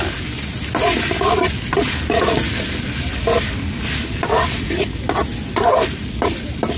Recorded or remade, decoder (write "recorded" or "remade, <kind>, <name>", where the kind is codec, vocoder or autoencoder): recorded